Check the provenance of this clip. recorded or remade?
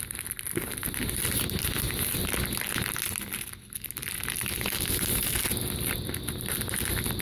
recorded